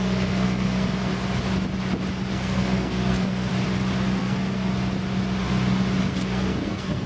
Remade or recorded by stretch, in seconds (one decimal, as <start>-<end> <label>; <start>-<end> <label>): 0.0-1.1 remade; 1.1-2.3 recorded; 2.3-3.5 remade; 3.5-4.2 recorded; 4.2-4.7 remade; 4.7-6.0 recorded; 6.0-7.1 remade